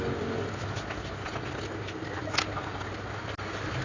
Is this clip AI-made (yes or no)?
no